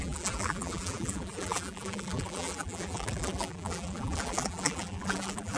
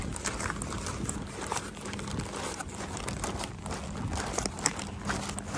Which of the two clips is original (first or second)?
second